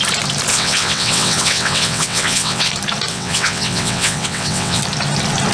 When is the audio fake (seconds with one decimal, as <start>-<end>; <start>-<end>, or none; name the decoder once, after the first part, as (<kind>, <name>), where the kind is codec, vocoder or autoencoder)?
0.5-2.7 (vocoder, WaveNeXt); 3.1-4.8